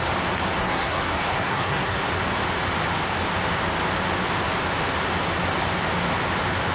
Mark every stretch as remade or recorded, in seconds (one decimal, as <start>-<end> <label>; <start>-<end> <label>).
0.0-0.6 recorded; 0.6-2.0 remade; 2.0-6.7 recorded